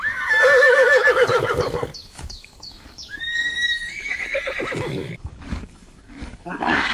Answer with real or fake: fake